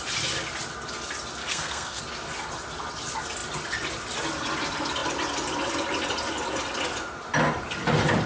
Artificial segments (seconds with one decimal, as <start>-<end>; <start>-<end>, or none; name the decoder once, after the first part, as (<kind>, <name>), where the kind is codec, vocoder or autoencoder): 1.4-2.0 (codec, SNAC)